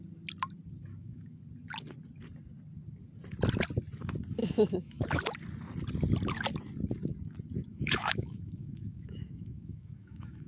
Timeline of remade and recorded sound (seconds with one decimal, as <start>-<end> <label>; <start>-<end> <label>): 0.0-0.9 recorded; 0.9-1.4 remade; 1.4-4.4 recorded; 4.4-5.2 remade; 5.2-7.7 recorded; 7.7-10.5 remade